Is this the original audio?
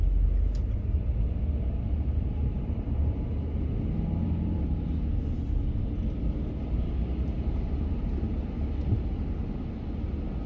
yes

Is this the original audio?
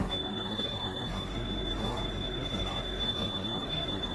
no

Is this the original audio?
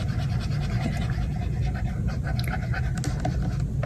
yes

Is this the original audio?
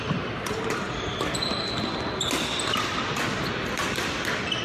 yes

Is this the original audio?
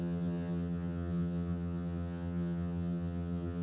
no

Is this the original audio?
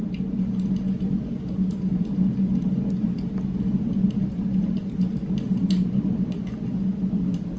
yes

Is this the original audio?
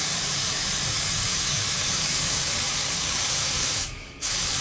no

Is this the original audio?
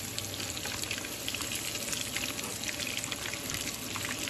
yes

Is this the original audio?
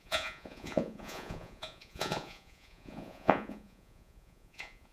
no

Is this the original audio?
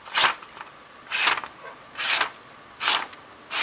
yes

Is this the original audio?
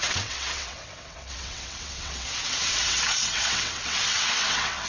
no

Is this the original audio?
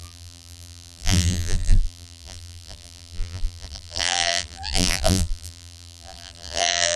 no